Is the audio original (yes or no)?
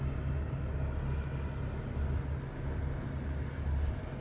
yes